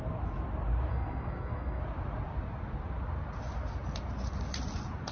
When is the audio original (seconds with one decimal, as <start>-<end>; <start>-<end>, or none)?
0.0-0.9; 1.8-5.1